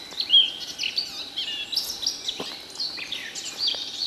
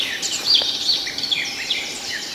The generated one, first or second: second